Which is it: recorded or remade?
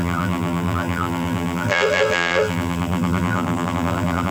remade